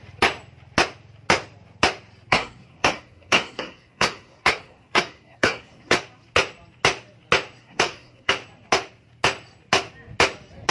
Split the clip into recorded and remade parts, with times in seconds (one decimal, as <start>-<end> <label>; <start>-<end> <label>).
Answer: 0.0-2.3 recorded; 2.3-6.0 remade; 6.0-7.6 recorded; 7.6-8.3 remade; 8.3-10.7 recorded